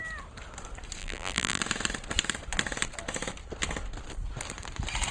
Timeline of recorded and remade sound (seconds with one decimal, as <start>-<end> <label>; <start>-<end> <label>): 0.0-1.0 recorded; 1.0-1.6 remade; 1.6-5.1 recorded